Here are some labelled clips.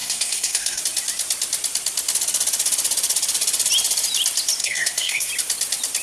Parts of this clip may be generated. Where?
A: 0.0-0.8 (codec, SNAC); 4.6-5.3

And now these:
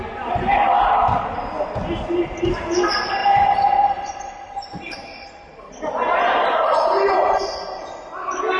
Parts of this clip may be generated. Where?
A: 3.2-8.1 (vocoder, BigVGAN v2)

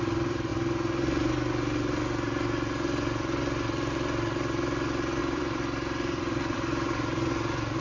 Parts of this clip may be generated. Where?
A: 0.0-0.5 (vocoder, BigVGAN v2); 5.2-7.8

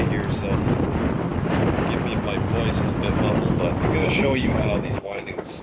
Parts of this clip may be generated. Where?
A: 4.0-5.6 (codec, DAC)

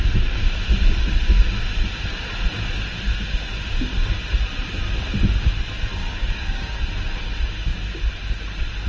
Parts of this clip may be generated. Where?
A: 6.0-6.8 (codec, DAC)

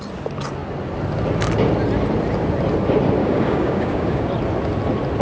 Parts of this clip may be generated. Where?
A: 3.2-4.3 (codec, DAC)

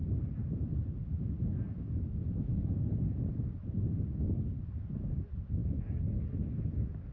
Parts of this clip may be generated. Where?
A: 5.6-6.2 (vocoder, BigVGAN v2)

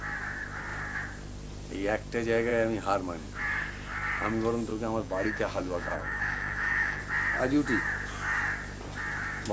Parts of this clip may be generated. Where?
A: 4.7-7.0 (autoencoder, DAC-VAE)